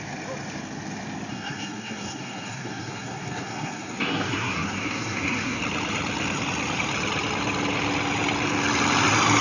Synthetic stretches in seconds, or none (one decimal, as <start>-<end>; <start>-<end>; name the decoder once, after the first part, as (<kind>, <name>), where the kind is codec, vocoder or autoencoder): 1.3-5.6 (codec, SNAC)